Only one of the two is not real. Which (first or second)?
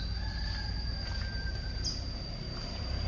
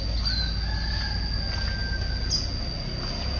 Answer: first